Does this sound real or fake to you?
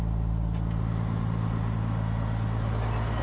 real